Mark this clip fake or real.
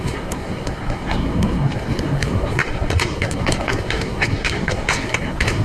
fake